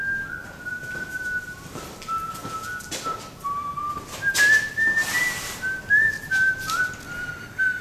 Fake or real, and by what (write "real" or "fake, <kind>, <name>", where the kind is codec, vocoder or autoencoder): real